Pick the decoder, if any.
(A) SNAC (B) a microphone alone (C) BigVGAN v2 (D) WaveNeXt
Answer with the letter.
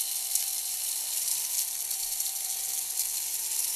B